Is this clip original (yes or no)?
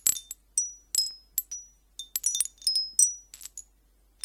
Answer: yes